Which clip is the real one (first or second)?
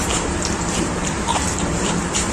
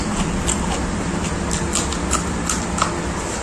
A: second